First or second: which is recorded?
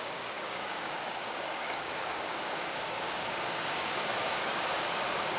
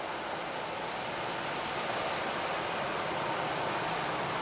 second